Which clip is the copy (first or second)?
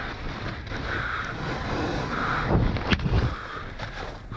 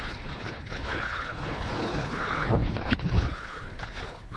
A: second